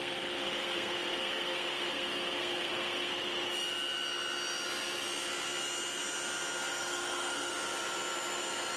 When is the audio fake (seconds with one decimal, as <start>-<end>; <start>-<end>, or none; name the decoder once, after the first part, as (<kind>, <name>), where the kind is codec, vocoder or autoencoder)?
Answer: 0.0-3.1 (codec, SNAC); 6.7-7.5